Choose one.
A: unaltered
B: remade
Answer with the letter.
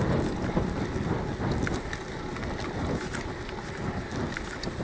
A